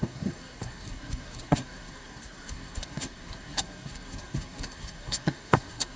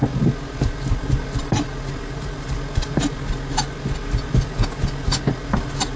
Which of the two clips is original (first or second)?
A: second